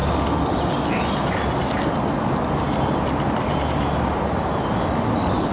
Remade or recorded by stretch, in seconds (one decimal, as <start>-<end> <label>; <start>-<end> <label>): 0.0-5.5 recorded